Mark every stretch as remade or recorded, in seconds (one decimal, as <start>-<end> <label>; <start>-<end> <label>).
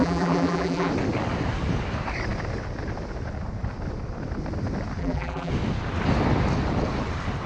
0.0-0.9 remade; 0.9-5.0 recorded; 5.0-5.5 remade; 5.5-7.5 recorded